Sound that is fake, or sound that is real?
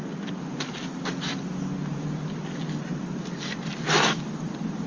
real